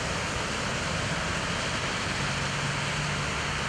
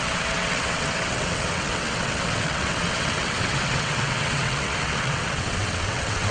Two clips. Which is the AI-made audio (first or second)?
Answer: second